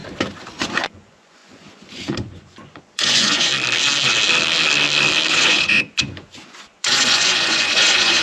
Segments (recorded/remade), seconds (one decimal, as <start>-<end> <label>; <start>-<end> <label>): 0.0-0.5 recorded; 0.5-3.5 remade; 3.5-5.3 recorded; 5.3-8.2 remade

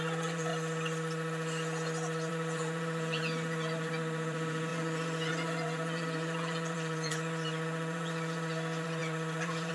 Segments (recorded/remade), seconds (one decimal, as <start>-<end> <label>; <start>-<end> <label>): 0.0-0.5 remade; 0.5-2.3 recorded; 2.3-9.7 remade